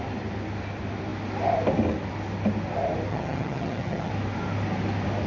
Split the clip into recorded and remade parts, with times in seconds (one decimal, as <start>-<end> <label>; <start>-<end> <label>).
0.0-3.1 recorded; 3.1-4.1 remade; 4.1-5.3 recorded